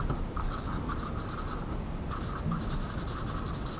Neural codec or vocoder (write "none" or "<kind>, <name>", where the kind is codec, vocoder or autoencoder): none